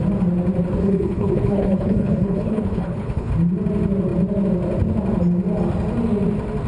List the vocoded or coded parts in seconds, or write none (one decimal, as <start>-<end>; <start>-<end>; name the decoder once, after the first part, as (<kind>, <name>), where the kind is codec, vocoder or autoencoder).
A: 0.8-3.3 (codec, HILCodec)

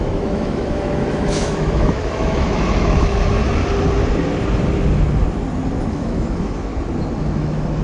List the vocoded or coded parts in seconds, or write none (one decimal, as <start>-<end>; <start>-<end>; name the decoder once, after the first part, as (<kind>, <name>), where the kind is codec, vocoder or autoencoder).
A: 0.0-3.4 (autoencoder, DAC-VAE); 5.9-6.7; 7.2-7.8

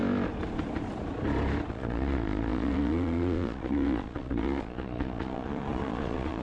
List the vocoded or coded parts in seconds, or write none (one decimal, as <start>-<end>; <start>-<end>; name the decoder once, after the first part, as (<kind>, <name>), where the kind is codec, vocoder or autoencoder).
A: 1.7-6.4 (vocoder, Vocos)

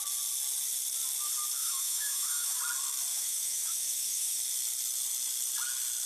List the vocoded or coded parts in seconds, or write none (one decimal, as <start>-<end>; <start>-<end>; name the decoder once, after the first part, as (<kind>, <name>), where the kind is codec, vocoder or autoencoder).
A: 1.6-2.6 (autoencoder, DAC-VAE); 3.1-4.4